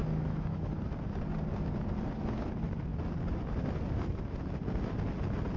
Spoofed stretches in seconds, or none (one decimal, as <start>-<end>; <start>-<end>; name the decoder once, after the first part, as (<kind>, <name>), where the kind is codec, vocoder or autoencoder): 0.0-0.8 (autoencoder, DAC-VAE)

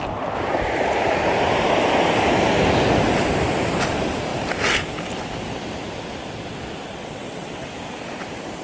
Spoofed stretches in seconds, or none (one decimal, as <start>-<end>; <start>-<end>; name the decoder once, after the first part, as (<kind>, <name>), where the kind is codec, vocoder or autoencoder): 6.9-7.7 (vocoder, WaveNeXt)

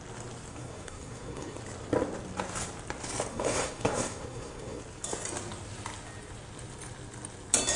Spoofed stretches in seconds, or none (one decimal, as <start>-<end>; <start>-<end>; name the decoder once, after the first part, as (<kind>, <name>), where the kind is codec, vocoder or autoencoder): 0.5-1.6 (codec, SNAC); 3.3-4.8

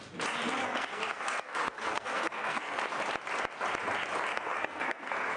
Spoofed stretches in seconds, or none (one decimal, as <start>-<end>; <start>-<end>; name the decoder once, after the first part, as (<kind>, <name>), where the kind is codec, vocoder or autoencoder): 0.6-2.8 (codec, SNAC); 4.3-5.4

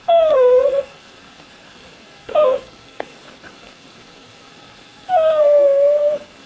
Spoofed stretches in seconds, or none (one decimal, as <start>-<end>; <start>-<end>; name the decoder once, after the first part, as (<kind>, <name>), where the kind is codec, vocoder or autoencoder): 0.0-6.5 (codec, SNAC)

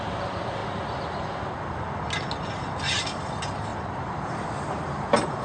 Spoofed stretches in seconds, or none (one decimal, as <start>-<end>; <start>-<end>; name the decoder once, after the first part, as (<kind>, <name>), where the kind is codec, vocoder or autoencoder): 3.7-5.4 (vocoder, BigVGAN v2)

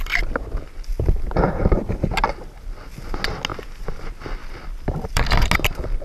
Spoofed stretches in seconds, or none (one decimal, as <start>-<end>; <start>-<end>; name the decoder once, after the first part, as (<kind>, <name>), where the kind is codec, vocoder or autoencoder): 0.9-1.6 (vocoder, BigVGAN v2); 4.4-5.3